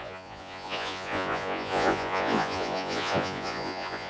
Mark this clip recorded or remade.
remade